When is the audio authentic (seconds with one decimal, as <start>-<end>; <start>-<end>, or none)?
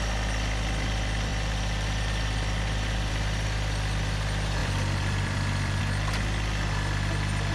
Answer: 0.0-1.3; 3.1-4.6; 5.8-7.5